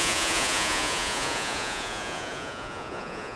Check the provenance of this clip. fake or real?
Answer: fake